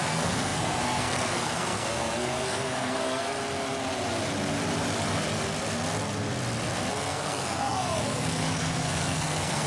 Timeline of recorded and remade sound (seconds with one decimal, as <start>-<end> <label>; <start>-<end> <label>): 0.0-3.4 remade; 3.4-6.9 recorded; 6.9-9.7 remade